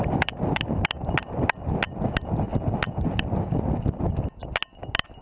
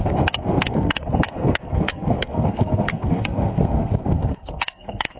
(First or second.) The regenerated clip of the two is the second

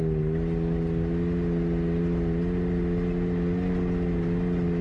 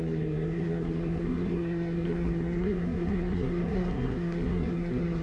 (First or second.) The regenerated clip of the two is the second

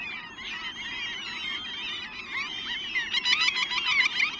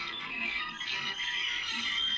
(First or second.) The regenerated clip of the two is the second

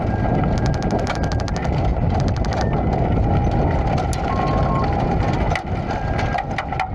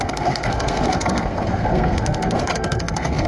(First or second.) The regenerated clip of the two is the second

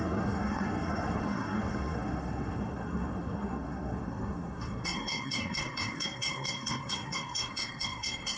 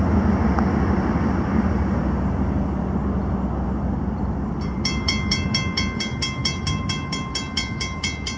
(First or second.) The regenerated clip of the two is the first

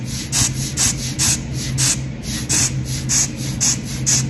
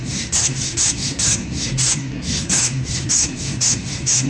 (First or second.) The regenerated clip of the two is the second